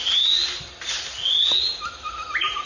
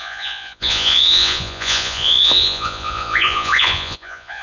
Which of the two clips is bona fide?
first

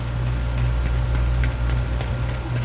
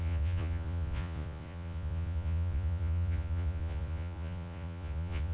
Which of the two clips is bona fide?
first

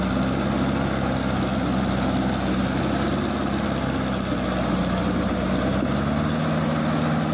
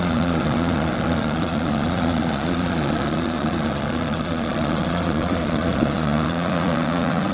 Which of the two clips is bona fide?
first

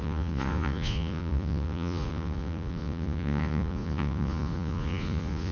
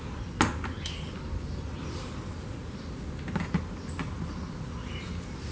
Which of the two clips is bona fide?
second